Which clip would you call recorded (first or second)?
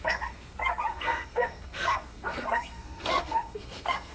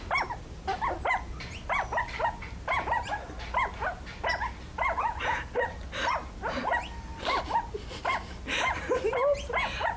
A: second